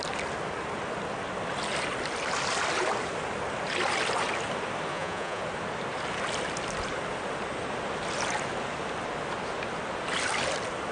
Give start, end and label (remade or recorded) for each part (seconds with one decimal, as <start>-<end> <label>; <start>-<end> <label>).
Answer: 0.0-4.9 recorded; 4.9-5.4 remade; 5.4-10.9 recorded